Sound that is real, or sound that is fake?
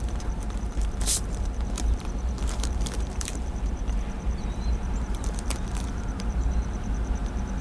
fake